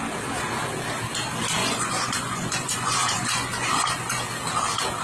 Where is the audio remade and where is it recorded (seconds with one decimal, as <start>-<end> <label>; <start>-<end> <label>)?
0.0-1.6 recorded; 1.6-4.2 remade; 4.2-5.0 recorded